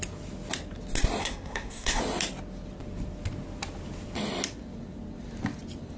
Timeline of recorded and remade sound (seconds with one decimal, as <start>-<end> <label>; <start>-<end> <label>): 0.0-1.2 recorded; 1.2-2.0 remade; 2.0-6.0 recorded